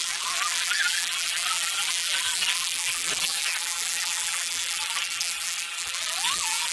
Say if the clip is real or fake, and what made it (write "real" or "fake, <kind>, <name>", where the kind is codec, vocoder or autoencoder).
fake, vocoder, BigVGAN v2